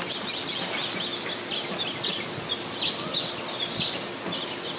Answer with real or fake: real